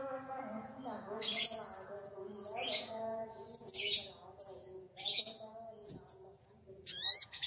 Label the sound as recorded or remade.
remade